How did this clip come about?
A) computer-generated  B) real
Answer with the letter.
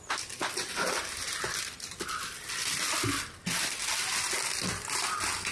B